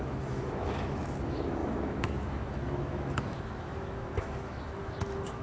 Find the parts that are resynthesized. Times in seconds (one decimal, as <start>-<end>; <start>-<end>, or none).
0.0-5.4